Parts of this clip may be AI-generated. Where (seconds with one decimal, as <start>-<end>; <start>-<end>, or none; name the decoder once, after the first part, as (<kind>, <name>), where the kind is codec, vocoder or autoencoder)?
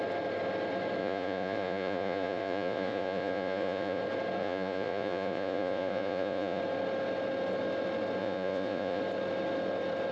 1.0-4.0 (vocoder, Vocos); 4.4-6.6; 8.2-9.0